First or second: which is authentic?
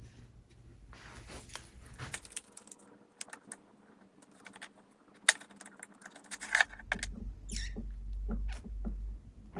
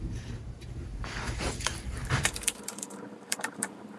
first